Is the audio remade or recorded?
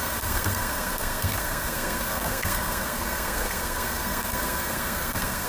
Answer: remade